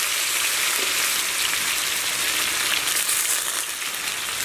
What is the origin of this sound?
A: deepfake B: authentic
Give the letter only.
B